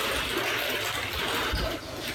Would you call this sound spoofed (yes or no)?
no